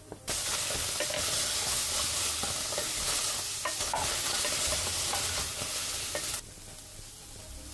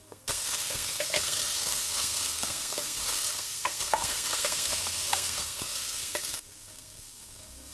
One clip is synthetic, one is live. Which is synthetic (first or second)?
second